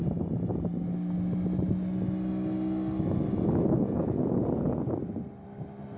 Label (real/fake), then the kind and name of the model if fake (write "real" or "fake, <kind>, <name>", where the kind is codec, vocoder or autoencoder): real